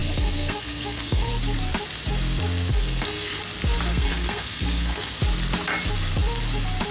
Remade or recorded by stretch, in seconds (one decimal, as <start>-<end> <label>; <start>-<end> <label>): 0.0-1.3 remade; 1.3-2.7 recorded; 2.7-3.4 remade; 3.4-3.9 recorded; 3.9-5.2 remade; 5.2-6.9 recorded